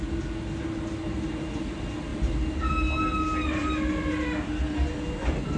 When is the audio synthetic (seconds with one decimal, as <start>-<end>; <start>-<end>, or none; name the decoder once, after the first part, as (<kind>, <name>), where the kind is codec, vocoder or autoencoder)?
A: 3.6-4.9 (vocoder, BigVGAN v2)